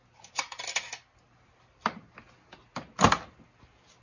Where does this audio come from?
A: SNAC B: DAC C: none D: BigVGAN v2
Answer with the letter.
C